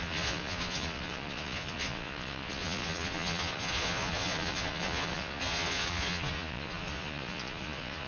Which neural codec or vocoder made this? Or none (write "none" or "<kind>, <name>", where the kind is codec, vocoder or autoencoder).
vocoder, Vocos